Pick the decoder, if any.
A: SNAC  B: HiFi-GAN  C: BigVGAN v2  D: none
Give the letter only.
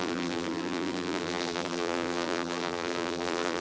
C